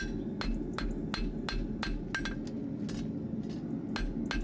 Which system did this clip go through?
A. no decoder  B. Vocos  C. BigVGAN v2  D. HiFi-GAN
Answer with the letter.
A